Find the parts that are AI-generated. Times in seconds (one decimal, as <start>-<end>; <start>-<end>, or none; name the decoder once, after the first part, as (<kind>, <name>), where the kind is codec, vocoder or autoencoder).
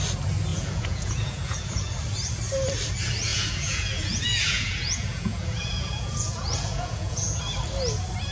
0.5-1.9 (vocoder, Vocos); 3.3-7.4